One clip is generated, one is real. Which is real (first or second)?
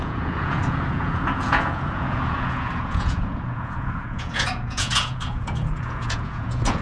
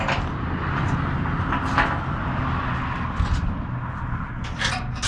second